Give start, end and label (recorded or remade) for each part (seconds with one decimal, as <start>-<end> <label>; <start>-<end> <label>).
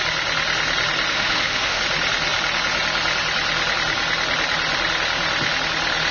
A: 0.0-1.1 recorded; 1.1-1.8 remade; 1.8-6.1 recorded